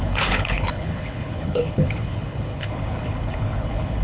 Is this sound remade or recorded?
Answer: remade